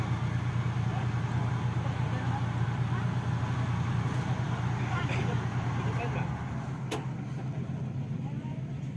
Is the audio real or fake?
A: real